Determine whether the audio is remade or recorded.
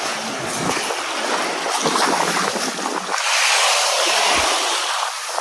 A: recorded